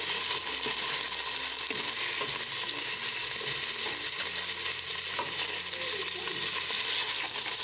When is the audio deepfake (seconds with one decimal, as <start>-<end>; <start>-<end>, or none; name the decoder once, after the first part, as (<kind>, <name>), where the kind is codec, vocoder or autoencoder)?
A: 7.0-7.6 (vocoder, BigVGAN v2)